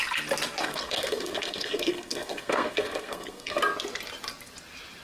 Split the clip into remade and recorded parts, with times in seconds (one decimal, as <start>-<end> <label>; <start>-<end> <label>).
0.0-0.6 recorded; 0.6-3.6 remade; 3.6-5.0 recorded